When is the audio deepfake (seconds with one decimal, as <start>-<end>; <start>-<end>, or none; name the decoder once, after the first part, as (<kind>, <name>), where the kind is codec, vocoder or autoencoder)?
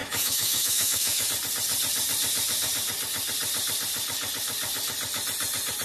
0.0-1.3 (autoencoder, DAC-VAE)